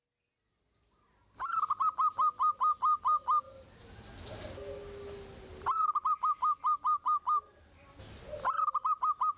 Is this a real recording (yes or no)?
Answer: yes